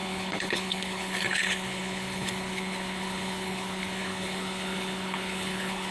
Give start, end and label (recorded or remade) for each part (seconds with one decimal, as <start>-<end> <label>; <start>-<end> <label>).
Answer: 0.0-5.9 remade